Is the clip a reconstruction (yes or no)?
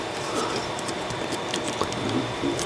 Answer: yes